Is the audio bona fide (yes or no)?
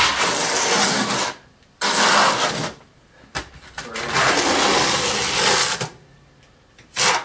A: yes